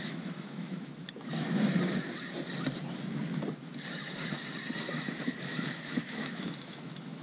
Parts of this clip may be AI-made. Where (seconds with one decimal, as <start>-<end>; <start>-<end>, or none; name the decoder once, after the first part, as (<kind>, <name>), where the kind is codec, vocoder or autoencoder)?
0.0-0.9 (autoencoder, DAC-VAE); 5.2-7.2